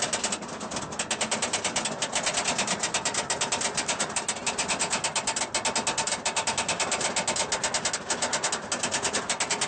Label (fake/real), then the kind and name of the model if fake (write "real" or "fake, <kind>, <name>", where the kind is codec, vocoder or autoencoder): real